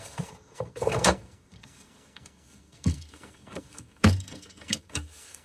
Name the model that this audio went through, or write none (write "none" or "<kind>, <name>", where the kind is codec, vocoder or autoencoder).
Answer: codec, SNAC